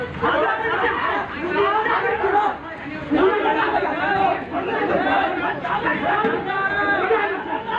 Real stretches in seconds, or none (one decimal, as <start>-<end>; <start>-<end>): 0.0-7.8